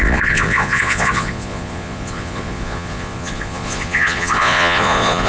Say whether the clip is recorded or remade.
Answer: remade